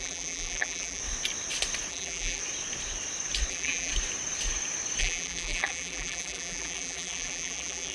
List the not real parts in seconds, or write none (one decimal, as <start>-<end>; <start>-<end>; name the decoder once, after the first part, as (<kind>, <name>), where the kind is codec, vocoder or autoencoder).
0.0-1.0 (vocoder, BigVGAN v2); 1.9-2.4; 3.5-3.9; 5.0-7.9